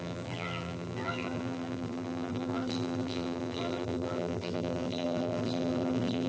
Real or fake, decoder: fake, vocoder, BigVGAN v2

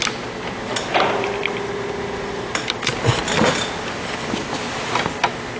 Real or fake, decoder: real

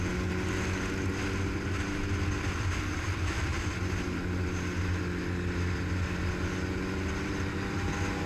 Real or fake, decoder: real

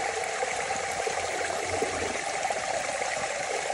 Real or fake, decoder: fake, vocoder, BigVGAN v2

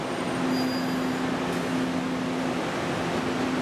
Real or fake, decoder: real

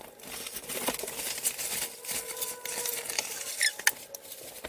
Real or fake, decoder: real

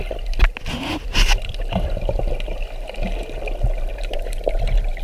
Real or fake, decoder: real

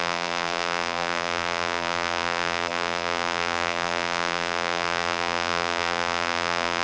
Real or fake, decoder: fake, vocoder, BigVGAN v2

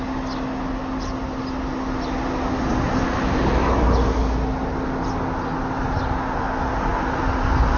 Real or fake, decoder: real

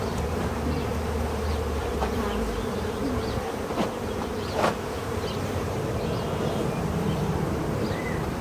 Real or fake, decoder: fake, vocoder, BigVGAN v2